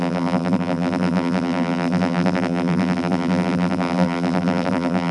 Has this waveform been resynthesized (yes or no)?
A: yes